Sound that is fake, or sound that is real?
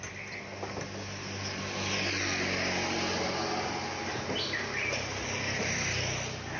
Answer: real